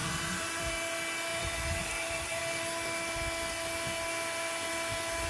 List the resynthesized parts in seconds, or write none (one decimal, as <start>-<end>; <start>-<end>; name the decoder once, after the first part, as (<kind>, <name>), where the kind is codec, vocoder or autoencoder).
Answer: 0.0-0.7 (vocoder, BigVGAN v2); 1.3-2.4